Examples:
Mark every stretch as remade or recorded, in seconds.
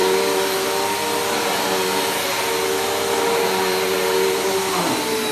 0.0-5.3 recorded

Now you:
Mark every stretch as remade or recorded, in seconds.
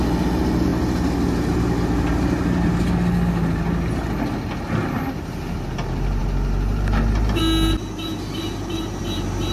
0.0-9.5 recorded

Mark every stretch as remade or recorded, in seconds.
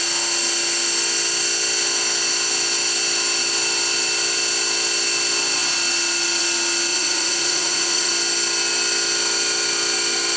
0.0-6.9 recorded; 6.9-8.1 remade; 8.1-10.4 recorded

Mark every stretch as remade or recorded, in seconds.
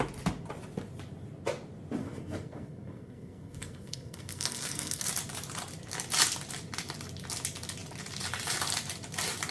0.0-2.0 recorded; 2.0-5.1 remade; 5.1-9.5 recorded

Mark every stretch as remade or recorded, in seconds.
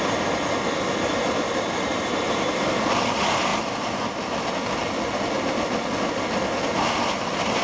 0.0-1.1 recorded; 1.1-2.8 remade; 2.8-3.5 recorded; 3.5-4.3 remade; 4.3-7.6 recorded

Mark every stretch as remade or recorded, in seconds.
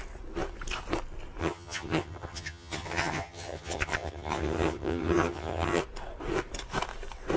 0.0-1.4 recorded; 1.4-5.8 remade; 5.8-7.4 recorded